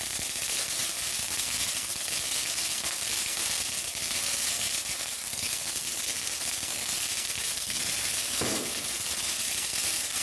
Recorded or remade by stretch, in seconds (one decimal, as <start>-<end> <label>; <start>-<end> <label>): 0.0-10.2 remade